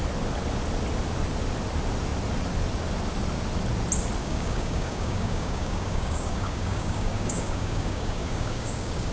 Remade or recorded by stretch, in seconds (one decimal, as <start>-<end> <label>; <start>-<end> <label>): 0.0-4.2 recorded; 4.2-9.1 remade